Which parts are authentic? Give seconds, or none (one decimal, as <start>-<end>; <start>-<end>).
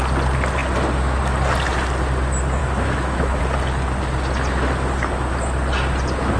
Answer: 0.0-2.6; 3.4-6.4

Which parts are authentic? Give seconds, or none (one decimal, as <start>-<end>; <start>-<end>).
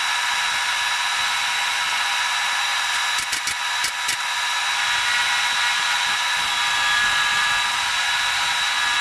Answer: 0.0-9.0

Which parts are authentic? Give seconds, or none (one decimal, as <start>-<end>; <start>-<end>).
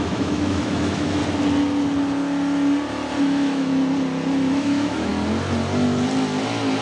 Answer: 1.2-3.2; 3.7-4.5; 5.1-6.8